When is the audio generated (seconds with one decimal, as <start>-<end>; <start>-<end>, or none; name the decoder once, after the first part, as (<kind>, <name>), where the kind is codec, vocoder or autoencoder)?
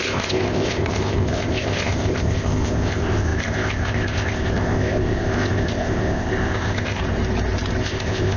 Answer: 0.0-7.0 (codec, ZipCodec); 7.8-8.4